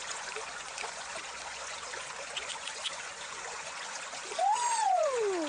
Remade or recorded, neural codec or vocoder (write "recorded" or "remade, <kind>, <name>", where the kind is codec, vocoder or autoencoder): remade, vocoder, Vocos